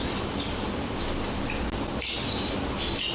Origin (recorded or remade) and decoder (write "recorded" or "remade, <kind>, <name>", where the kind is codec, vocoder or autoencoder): recorded